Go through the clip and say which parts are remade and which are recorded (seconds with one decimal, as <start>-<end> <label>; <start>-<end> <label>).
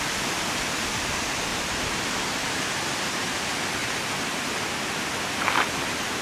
0.0-1.5 recorded; 1.5-3.3 remade; 3.3-6.2 recorded